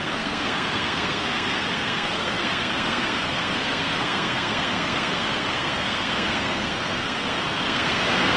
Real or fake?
fake